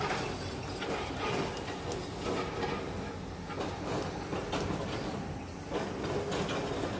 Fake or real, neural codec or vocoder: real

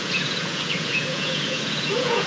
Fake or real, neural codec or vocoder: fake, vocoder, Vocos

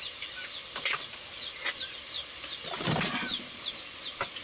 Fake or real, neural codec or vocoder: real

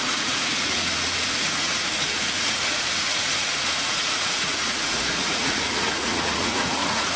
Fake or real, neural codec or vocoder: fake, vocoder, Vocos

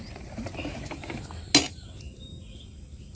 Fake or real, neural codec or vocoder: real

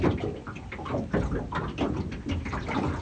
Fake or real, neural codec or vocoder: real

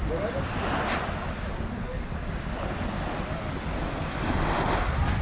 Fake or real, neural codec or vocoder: real